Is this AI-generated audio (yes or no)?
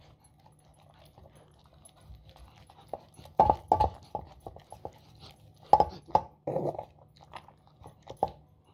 no